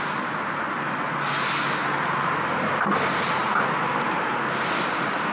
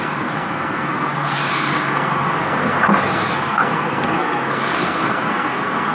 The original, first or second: first